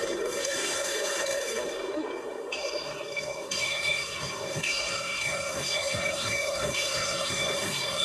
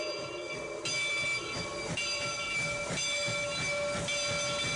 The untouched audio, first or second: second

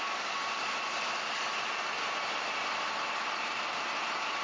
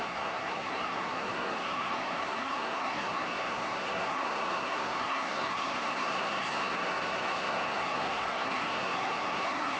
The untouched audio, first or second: first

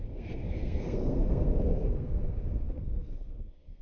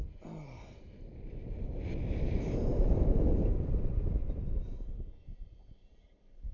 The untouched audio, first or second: second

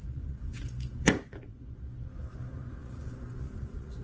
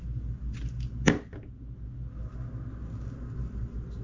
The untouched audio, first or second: second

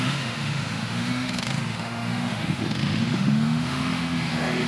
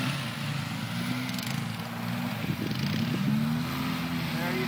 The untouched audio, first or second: second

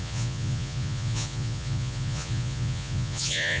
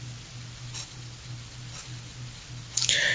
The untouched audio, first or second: second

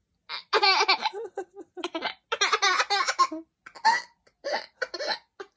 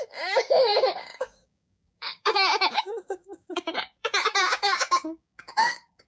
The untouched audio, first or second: first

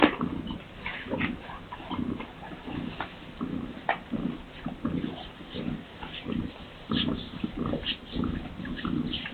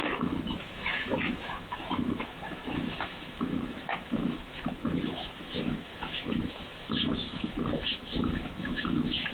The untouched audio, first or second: first